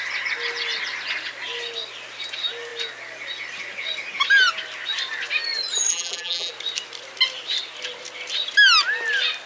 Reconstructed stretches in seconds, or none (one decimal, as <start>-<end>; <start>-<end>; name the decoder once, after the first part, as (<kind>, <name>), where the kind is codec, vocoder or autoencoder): 5.9-6.5 (vocoder, BigVGAN v2)